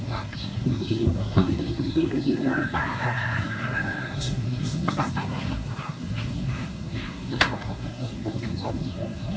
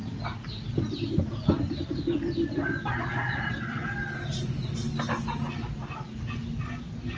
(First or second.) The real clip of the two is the second